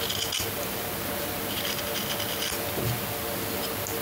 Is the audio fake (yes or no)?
no